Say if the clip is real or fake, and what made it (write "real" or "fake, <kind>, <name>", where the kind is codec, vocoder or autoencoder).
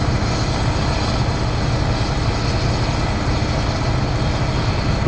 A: real